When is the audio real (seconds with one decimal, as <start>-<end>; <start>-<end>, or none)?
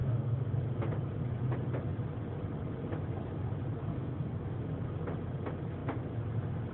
0.5-3.9; 4.6-6.7